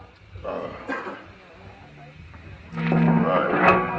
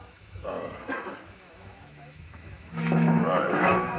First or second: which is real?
first